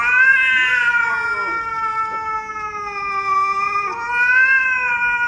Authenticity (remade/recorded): recorded